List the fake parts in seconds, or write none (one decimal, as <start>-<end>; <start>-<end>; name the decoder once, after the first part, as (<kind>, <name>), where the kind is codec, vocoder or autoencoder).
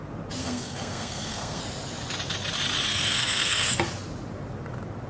0.4-1.6 (codec, SNAC); 2.9-3.7